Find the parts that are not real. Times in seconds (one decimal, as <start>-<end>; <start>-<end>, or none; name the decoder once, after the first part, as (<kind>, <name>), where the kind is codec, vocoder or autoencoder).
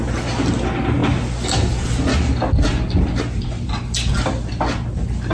none